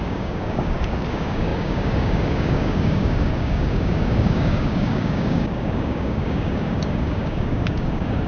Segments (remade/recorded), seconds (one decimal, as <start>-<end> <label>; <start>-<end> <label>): 0.0-8.3 remade